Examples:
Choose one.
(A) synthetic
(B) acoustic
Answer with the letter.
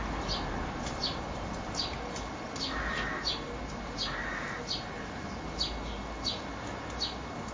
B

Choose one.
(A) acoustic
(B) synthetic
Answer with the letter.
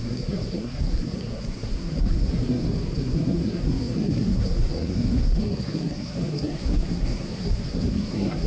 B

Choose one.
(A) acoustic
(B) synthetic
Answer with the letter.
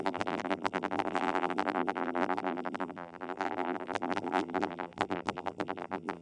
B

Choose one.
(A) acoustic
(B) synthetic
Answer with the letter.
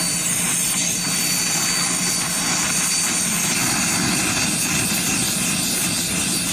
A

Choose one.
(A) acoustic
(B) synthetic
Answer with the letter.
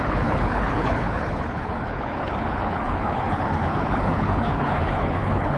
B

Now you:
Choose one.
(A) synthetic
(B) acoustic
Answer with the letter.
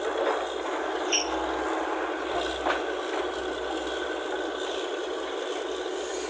B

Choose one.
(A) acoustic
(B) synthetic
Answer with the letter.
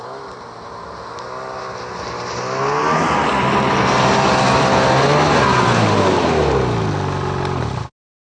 A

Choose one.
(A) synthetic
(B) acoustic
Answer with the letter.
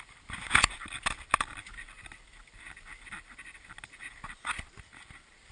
B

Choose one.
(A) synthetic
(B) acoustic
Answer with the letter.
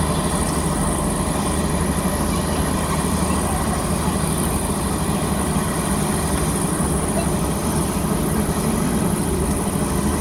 B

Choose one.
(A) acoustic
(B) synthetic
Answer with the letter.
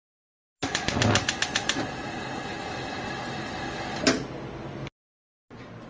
A